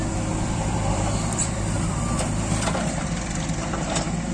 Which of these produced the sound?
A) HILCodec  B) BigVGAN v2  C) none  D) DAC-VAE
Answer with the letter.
B